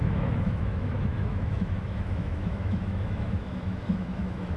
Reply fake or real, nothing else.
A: fake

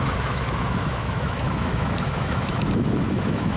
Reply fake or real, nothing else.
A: fake